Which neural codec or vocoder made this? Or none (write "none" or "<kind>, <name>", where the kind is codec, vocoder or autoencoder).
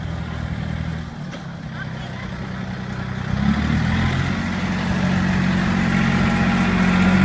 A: none